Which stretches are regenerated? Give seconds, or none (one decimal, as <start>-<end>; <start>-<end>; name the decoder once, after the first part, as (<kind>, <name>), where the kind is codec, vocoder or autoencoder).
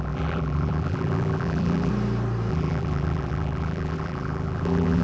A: 0.0-1.9 (vocoder, BigVGAN v2); 2.5-5.0